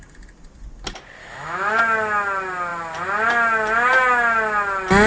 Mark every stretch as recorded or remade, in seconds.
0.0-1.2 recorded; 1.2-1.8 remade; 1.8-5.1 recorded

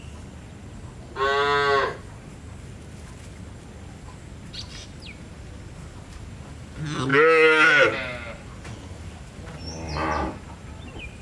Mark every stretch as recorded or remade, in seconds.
0.0-11.2 recorded

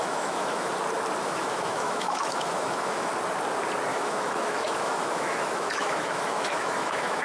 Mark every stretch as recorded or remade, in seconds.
0.0-0.7 remade; 0.7-1.2 recorded; 1.2-3.1 remade; 3.1-3.9 recorded; 3.9-7.2 remade

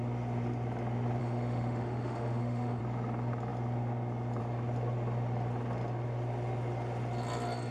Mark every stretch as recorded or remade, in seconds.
0.0-1.2 recorded; 1.2-2.8 remade; 2.8-7.7 recorded

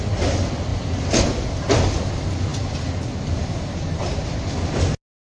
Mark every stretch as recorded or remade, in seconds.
0.0-5.3 recorded